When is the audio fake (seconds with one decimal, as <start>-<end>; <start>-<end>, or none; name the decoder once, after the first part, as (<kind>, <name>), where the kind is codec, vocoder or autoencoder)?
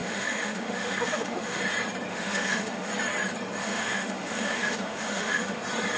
0.0-1.6 (autoencoder, DAC-VAE); 2.1-2.9; 3.6-5.6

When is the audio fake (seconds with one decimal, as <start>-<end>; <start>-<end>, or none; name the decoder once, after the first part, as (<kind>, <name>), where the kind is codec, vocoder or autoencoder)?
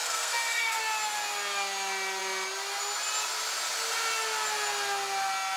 0.0-0.8 (codec, SNAC)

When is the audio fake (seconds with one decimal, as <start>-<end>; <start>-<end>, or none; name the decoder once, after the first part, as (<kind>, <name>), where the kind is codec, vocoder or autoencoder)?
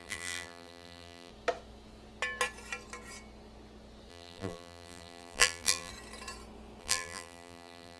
0.0-1.3 (vocoder, BigVGAN v2); 4.1-5.9; 6.8-8.0